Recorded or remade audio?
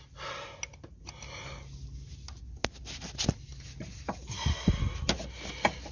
recorded